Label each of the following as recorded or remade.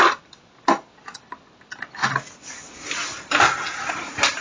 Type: recorded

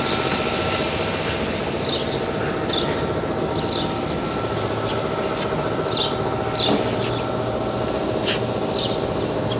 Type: recorded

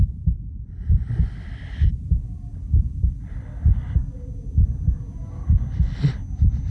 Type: recorded